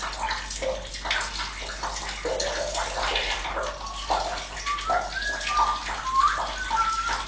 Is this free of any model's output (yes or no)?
yes